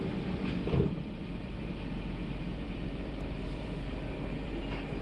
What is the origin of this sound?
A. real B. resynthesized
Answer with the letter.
B